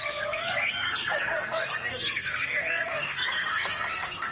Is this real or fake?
fake